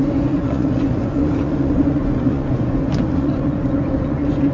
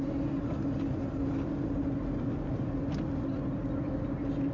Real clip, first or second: second